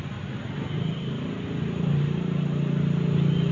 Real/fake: real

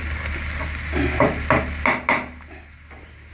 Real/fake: real